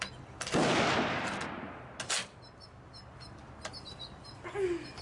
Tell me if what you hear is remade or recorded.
recorded